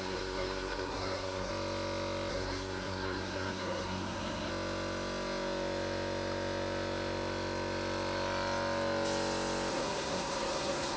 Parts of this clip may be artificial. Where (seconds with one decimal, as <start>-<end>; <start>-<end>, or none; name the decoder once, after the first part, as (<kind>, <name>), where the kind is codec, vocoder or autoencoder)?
0.0-1.5 (codec, SNAC); 2.3-4.5; 9.7-11.0